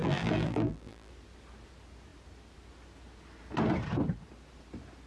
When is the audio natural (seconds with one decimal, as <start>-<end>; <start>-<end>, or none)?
1.1-5.1